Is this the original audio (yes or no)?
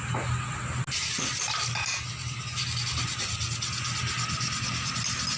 yes